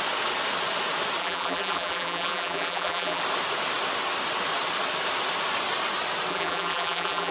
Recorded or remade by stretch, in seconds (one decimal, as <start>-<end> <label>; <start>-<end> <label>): 0.0-1.2 recorded; 1.2-3.2 remade; 3.2-6.3 recorded; 6.3-7.3 remade

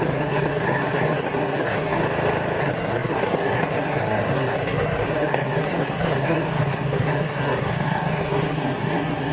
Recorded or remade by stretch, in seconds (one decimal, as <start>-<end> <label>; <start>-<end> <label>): 0.0-2.0 remade; 2.0-2.6 recorded; 2.6-9.3 remade